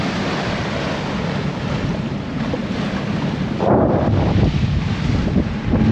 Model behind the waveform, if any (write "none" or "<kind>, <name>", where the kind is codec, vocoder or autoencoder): none